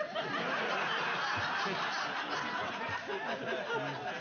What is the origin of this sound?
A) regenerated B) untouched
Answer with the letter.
B